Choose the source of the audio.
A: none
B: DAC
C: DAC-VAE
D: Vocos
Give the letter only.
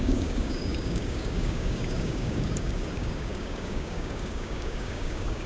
B